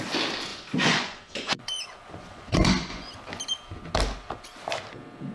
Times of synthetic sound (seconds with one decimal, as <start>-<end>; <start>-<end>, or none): 0.5-3.1